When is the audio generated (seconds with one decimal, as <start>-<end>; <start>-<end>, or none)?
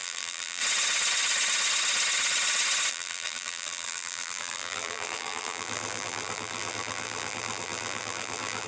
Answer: 0.0-0.6; 2.9-8.7